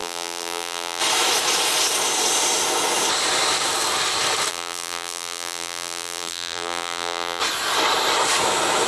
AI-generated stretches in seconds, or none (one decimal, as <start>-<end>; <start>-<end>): 0.0-1.0; 4.5-7.4